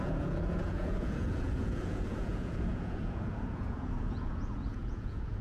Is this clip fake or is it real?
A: fake